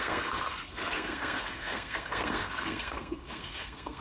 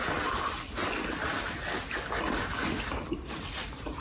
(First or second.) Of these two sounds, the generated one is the first